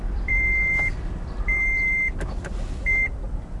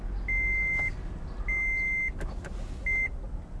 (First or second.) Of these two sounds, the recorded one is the second